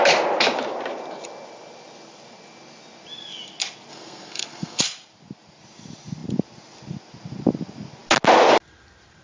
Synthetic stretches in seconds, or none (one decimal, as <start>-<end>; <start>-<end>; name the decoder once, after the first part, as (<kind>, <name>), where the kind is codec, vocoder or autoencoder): 3.9-4.8 (codec, SNAC)